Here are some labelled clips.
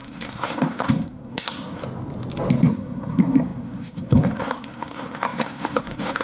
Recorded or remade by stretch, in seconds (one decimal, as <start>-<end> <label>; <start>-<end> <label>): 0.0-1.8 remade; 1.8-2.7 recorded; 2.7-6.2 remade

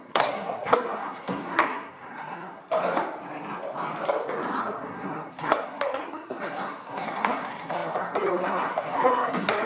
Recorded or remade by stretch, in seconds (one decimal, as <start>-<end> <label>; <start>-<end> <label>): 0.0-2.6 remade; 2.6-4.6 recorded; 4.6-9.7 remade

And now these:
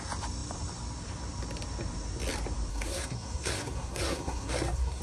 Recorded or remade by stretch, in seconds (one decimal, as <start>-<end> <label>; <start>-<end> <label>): 0.0-2.7 recorded; 2.7-5.0 remade